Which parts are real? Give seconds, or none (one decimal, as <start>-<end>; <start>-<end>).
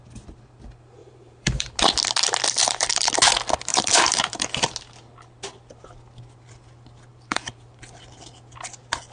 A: 0.0-1.0; 1.7-2.6; 3.1-3.7; 4.5-7.1; 7.8-9.1